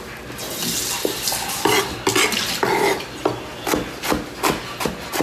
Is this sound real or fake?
real